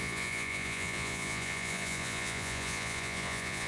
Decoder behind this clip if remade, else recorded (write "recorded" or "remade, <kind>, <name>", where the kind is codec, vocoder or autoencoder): remade, vocoder, Vocos